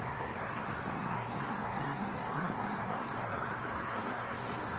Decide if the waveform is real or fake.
fake